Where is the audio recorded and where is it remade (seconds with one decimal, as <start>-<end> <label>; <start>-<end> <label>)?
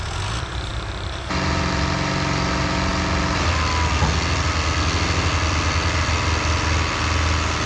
0.0-7.7 recorded